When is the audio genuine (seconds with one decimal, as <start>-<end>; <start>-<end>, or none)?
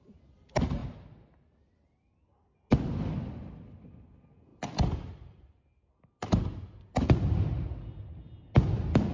0.0-9.1